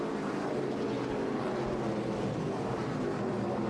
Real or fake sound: real